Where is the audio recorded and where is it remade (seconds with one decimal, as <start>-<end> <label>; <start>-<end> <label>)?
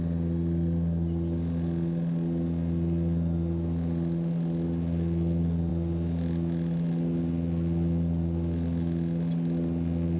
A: 0.0-10.2 recorded